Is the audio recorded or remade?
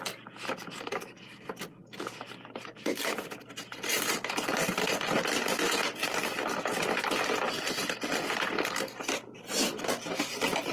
recorded